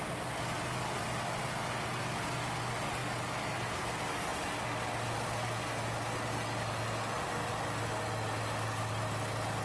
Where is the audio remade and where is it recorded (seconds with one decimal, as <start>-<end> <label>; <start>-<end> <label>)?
0.0-9.6 recorded